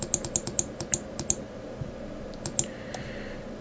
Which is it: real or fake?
real